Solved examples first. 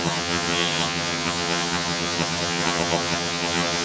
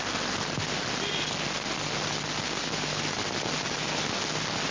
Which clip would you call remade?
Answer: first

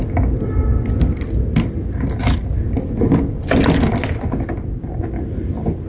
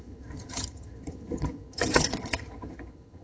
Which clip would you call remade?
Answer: second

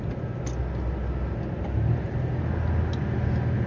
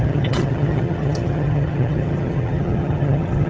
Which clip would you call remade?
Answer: second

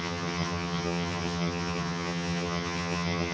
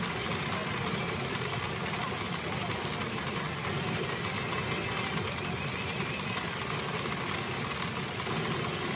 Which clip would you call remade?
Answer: first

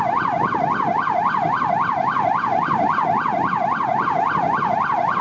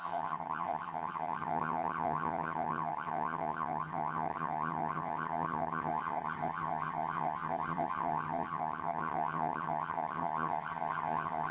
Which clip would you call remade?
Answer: second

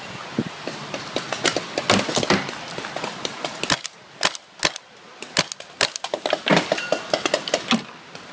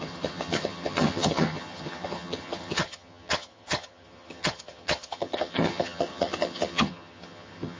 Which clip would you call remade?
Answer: second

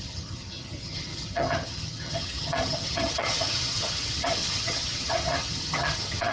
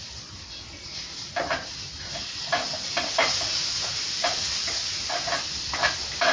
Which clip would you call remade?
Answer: first